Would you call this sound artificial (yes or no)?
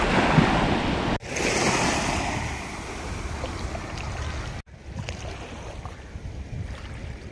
no